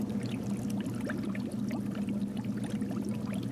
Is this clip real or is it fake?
real